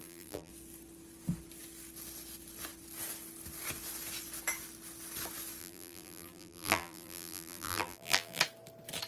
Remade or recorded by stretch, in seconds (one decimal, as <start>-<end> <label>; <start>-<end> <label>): 0.0-0.5 remade; 0.5-5.6 recorded; 5.6-8.4 remade; 8.4-9.1 recorded